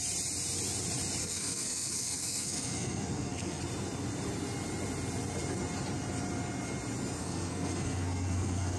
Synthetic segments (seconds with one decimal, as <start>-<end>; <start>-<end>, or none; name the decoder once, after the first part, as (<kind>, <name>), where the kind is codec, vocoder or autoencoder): 1.2-3.6 (codec, SNAC); 7.2-8.8